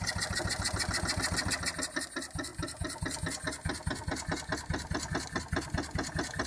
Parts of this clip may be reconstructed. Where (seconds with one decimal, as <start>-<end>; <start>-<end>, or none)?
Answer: none